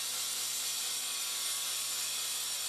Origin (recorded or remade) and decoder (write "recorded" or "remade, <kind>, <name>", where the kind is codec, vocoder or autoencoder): recorded